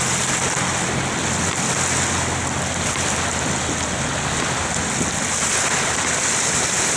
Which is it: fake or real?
real